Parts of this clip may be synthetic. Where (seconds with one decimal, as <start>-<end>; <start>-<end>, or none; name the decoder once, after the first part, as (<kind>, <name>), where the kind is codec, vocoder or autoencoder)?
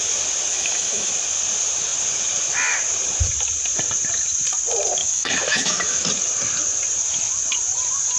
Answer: 0.5-1.1 (autoencoder, DAC-VAE); 5.0-6.1